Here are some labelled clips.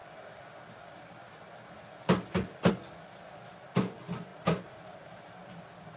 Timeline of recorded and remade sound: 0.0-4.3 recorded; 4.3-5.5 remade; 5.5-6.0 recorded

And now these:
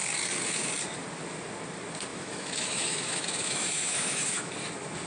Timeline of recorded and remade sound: 0.0-2.1 recorded; 2.1-4.5 remade; 4.5-5.1 recorded

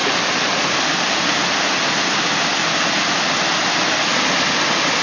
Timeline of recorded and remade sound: 0.0-5.0 recorded

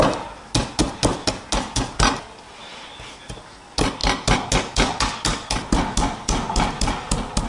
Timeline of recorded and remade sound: 0.0-7.5 recorded

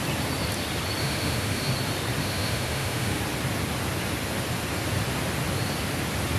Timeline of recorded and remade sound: 0.0-1.0 recorded; 1.0-1.7 remade; 1.7-2.2 recorded; 2.2-3.2 remade; 3.2-6.4 recorded

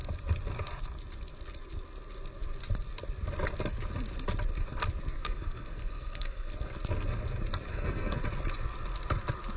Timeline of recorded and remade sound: 0.0-5.2 recorded; 5.2-6.5 remade; 6.5-7.7 recorded; 7.7-8.2 remade; 8.2-9.6 recorded